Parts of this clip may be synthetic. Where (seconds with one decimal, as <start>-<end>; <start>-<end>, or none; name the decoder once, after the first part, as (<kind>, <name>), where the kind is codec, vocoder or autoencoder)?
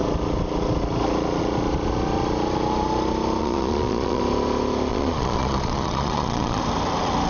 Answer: 3.4-4.2 (vocoder, Vocos); 4.9-6.6